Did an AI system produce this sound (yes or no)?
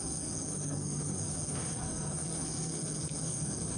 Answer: yes